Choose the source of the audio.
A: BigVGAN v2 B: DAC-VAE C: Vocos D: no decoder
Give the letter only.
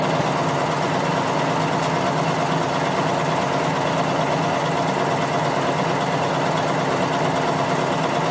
D